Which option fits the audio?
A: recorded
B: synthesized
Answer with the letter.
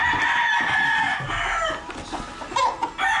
A